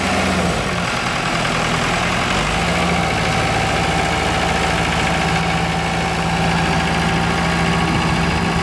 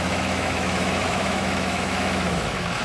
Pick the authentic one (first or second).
first